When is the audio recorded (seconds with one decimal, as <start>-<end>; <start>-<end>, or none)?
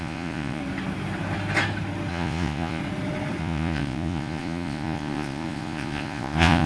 0.6-2.1; 2.8-3.4